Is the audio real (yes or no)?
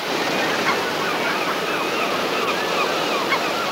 yes